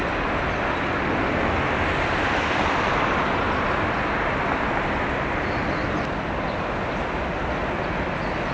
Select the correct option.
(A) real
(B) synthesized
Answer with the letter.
A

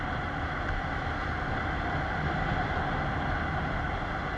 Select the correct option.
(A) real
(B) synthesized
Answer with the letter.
A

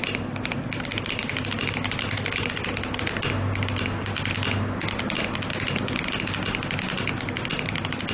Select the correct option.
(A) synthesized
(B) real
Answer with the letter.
B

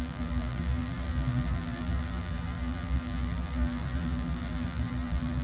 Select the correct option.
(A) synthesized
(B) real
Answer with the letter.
A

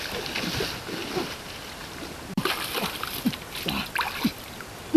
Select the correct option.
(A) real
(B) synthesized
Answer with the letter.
A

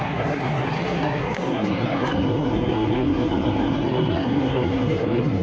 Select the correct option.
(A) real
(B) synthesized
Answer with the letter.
B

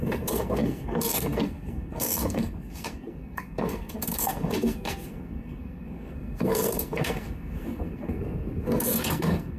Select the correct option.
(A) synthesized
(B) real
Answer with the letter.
A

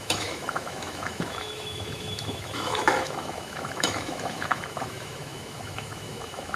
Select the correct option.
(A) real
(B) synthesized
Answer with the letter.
B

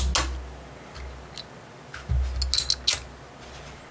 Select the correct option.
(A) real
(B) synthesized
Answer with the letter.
A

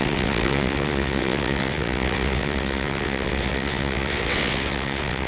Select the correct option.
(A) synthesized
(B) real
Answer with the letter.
A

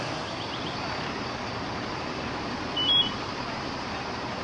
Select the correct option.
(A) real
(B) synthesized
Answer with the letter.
B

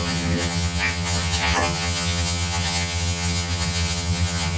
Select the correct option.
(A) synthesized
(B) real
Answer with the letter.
A